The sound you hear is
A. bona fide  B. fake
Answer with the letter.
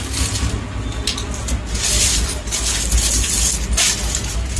A